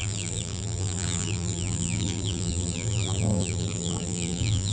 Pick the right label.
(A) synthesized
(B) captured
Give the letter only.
A